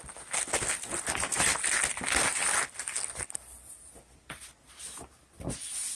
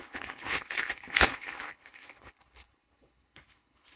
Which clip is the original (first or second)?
first